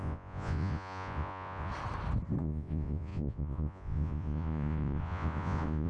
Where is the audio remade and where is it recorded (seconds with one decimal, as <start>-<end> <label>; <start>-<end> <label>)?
0.0-1.7 remade; 1.7-2.4 recorded; 2.4-5.9 remade